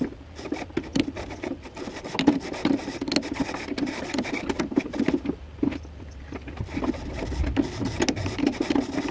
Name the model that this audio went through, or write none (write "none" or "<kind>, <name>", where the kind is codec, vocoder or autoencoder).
none